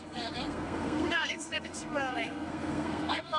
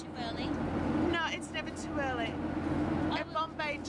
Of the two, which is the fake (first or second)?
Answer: first